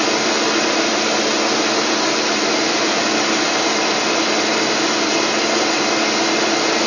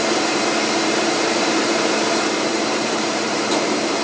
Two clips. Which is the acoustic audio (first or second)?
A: first